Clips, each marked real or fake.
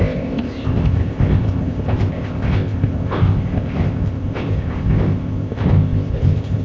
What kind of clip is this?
fake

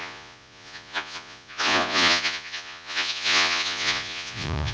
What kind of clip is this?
fake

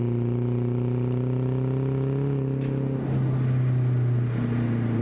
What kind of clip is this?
real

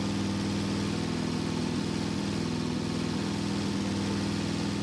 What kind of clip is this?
real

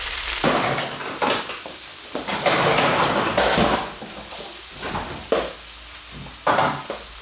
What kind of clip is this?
real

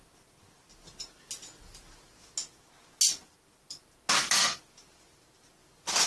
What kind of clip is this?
real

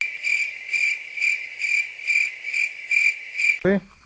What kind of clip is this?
real